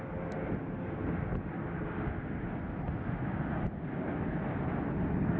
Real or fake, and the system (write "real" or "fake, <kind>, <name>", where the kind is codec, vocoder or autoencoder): real